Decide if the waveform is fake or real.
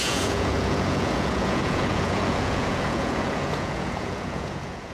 fake